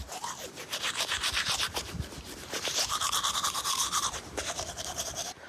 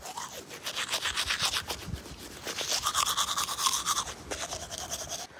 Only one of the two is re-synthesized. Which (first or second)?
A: first